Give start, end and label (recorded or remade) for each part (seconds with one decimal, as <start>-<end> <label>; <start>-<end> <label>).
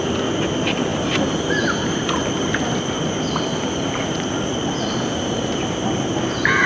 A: 0.0-6.7 recorded